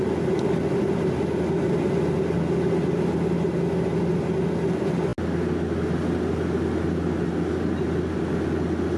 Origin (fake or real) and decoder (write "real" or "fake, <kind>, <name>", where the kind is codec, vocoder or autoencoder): real